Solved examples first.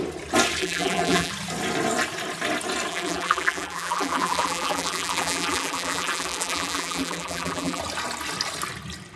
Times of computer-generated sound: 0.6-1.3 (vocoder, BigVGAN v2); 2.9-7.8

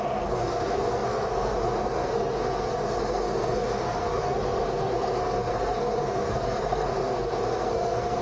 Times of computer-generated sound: 0.0-8.2 (codec, SNAC)

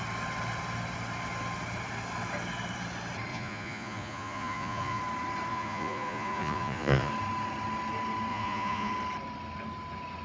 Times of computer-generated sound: 3.3-5.0 (vocoder, Vocos); 5.5-7.1; 8.3-8.9

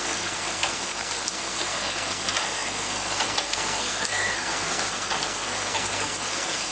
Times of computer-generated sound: 0.0-6.7 (codec, SNAC)

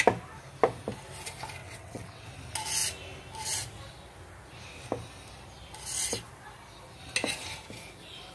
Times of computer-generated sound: 1.6-2.3 (vocoder, WaveNeXt)